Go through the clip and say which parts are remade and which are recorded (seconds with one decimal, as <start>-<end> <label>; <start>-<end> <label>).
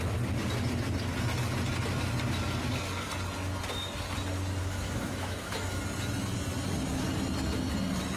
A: 0.0-4.6 recorded; 4.6-5.8 remade; 5.8-8.2 recorded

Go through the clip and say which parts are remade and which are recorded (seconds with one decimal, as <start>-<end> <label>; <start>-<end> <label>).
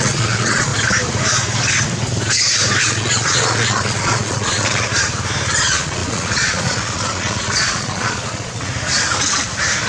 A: 0.0-0.7 remade; 0.7-2.8 recorded; 2.8-4.9 remade; 4.9-5.6 recorded; 5.6-8.7 remade; 8.7-9.9 recorded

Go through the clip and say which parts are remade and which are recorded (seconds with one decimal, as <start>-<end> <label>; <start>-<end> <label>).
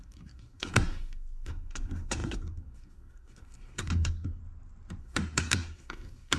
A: 0.0-4.4 remade; 4.4-5.0 recorded; 5.0-6.4 remade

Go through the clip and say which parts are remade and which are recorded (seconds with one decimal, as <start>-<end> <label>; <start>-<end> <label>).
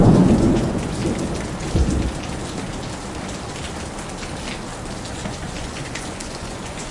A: 0.0-1.0 remade; 1.0-5.1 recorded; 5.1-6.9 remade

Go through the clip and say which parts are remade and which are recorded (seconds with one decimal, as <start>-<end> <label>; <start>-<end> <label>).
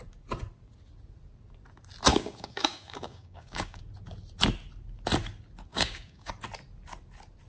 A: 0.0-2.1 recorded; 2.1-3.8 remade; 3.8-5.7 recorded; 5.7-6.3 remade; 6.3-7.5 recorded